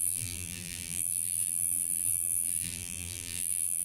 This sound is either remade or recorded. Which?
remade